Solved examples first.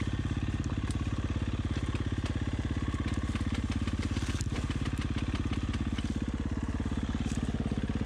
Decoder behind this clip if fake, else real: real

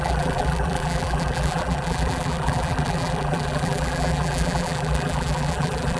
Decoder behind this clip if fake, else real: fake, vocoder, BigVGAN v2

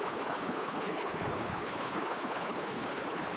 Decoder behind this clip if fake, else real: fake, codec, HILCodec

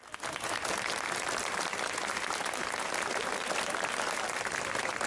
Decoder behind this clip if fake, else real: real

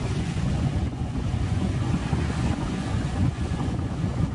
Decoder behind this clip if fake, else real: fake, vocoder, Vocos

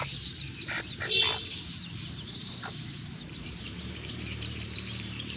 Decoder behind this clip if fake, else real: fake, vocoder, BigVGAN v2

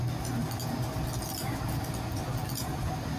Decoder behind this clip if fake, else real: real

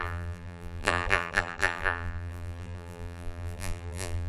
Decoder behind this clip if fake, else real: fake, vocoder, BigVGAN v2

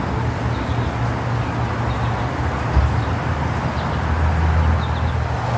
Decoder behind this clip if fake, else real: real